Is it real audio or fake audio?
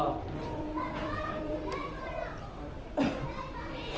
fake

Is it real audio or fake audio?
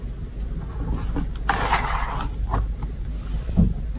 real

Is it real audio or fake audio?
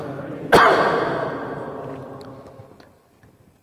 real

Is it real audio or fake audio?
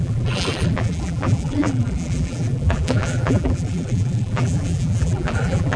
fake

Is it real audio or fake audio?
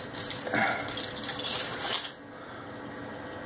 real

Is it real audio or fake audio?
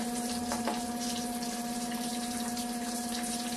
fake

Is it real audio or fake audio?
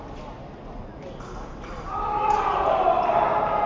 real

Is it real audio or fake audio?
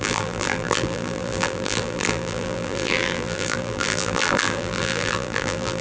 fake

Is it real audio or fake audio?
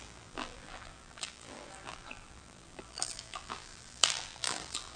fake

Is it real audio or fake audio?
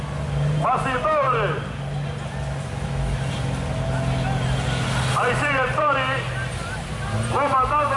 real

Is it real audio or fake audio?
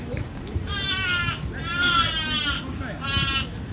real